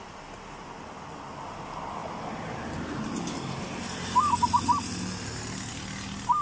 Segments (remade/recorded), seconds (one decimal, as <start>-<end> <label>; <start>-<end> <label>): 0.0-6.4 recorded